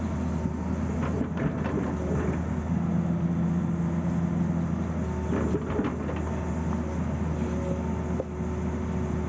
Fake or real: real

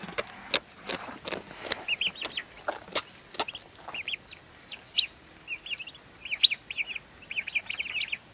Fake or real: real